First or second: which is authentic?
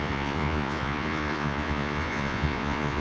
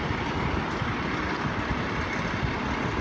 second